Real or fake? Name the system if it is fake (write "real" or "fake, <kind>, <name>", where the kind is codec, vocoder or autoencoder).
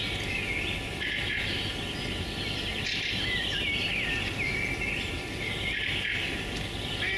real